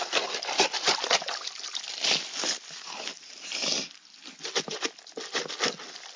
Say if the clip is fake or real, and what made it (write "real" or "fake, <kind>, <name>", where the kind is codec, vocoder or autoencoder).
real